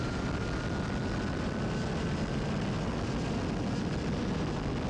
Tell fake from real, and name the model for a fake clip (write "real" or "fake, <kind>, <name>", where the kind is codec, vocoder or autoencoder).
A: real